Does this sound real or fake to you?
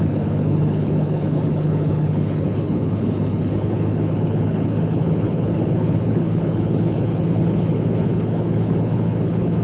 fake